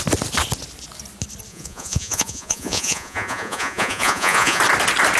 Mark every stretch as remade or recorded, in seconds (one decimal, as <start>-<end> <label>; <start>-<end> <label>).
0.0-1.5 recorded; 1.5-4.6 remade; 4.6-5.2 recorded